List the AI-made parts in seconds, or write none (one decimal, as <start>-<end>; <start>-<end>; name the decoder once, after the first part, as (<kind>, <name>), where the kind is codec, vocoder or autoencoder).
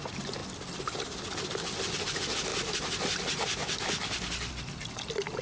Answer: 0.4-1.9 (vocoder, BigVGAN v2); 2.5-4.5